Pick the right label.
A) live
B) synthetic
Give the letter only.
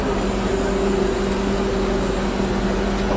A